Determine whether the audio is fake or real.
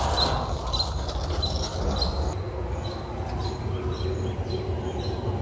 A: real